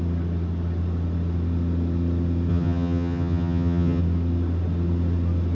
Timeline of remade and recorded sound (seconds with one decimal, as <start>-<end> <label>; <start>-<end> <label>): 0.0-2.5 recorded; 2.5-4.0 remade; 4.0-5.5 recorded